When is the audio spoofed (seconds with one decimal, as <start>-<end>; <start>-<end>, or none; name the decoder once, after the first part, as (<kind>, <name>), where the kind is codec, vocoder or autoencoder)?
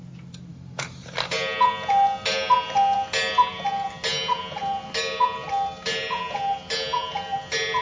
0.5-1.0 (autoencoder, DAC-VAE)